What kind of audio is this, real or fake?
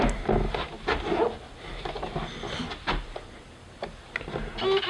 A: real